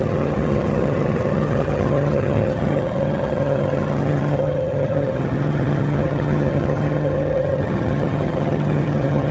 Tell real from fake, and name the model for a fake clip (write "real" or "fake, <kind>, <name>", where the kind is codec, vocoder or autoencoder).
fake, vocoder, HiFi-GAN